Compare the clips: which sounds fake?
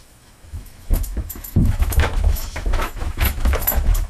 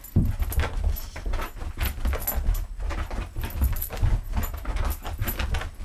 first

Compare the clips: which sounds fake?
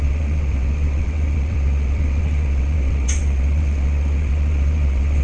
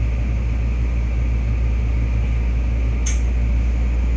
first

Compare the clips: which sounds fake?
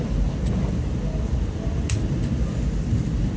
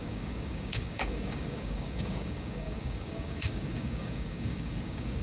second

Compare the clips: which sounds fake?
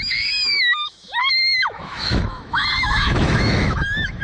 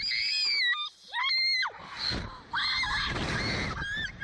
first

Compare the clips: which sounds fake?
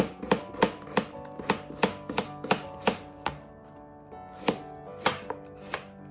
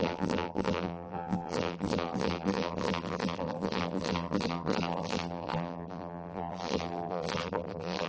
second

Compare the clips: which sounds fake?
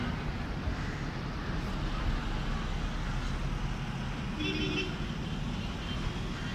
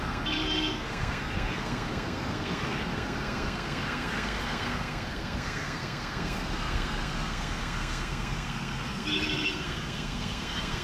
second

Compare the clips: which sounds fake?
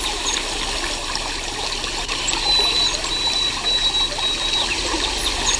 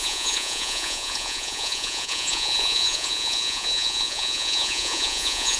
second